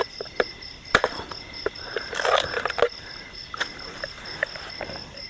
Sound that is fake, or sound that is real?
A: real